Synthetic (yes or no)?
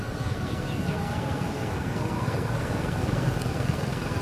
yes